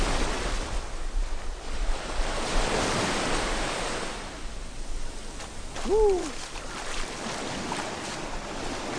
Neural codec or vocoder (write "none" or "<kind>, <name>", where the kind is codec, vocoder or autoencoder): none